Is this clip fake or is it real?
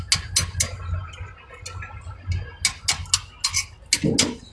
real